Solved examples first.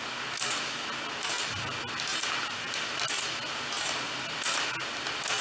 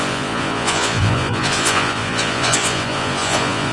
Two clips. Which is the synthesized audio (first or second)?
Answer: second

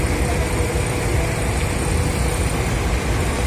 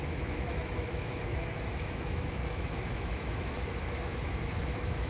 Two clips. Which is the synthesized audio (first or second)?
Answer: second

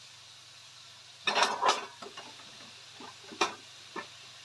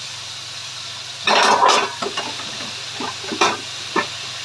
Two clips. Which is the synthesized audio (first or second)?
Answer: second